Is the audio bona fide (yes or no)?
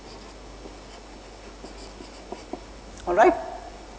yes